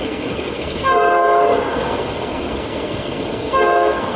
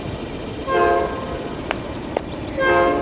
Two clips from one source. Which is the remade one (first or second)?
first